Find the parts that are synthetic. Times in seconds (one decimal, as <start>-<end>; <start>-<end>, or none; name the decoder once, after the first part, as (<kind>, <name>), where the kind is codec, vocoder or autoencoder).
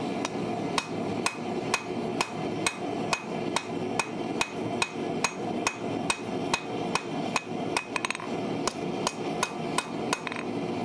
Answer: none